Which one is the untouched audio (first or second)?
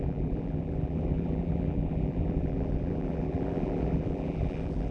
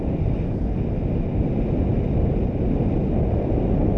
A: second